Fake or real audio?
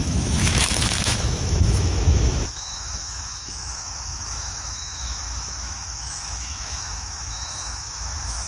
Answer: fake